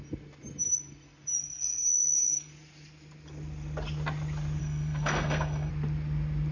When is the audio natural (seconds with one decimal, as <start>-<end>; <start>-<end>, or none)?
0.0-1.4; 2.5-4.6; 5.7-6.5